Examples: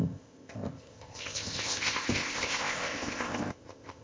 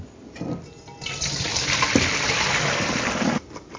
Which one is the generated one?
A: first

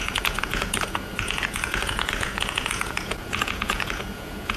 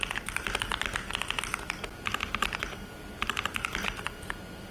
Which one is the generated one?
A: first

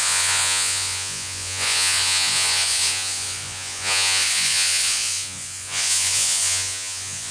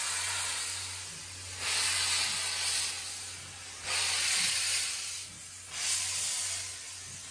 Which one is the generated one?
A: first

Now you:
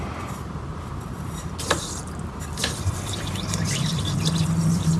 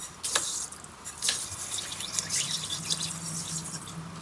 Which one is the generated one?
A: first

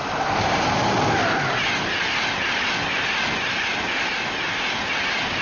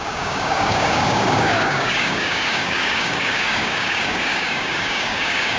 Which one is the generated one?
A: second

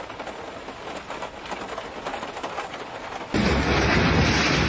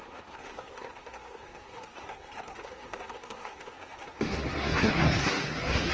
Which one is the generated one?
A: second